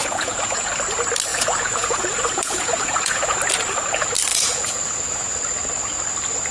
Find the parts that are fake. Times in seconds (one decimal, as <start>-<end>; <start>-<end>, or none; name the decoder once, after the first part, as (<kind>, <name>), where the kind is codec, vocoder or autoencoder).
0.0-0.7 (vocoder, Vocos); 1.3-3.4; 4.3-5.3